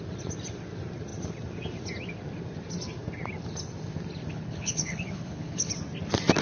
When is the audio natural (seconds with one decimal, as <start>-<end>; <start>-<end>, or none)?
0.0-4.3; 5.7-6.4